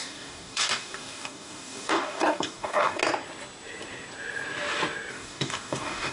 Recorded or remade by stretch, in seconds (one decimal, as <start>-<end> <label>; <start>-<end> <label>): 0.0-3.0 remade; 3.0-5.1 recorded; 5.1-6.1 remade